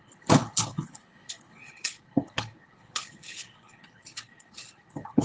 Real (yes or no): no